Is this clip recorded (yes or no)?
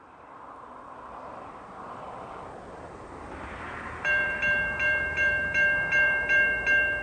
no